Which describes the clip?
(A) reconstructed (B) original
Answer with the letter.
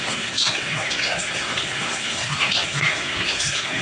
A